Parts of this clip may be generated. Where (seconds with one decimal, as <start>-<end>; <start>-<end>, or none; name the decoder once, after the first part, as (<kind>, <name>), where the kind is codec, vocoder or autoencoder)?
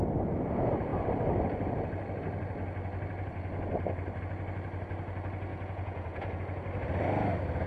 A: 5.5-6.4 (vocoder, Vocos)